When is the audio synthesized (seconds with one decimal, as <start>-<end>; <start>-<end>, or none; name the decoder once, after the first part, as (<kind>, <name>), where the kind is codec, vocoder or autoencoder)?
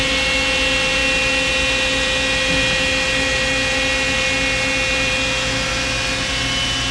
none